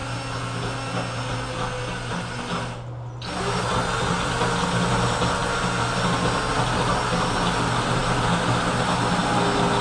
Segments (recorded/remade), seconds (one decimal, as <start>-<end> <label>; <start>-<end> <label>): 0.0-9.8 recorded